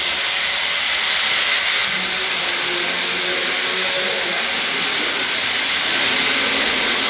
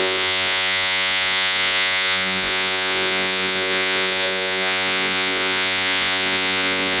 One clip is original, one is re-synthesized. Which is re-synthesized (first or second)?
second